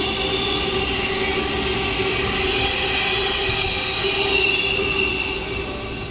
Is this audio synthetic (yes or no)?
no